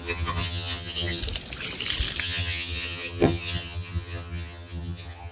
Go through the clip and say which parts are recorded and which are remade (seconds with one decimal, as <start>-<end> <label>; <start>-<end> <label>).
0.0-1.2 remade; 1.2-2.2 recorded; 2.2-5.3 remade